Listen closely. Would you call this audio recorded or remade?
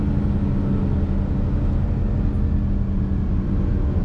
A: recorded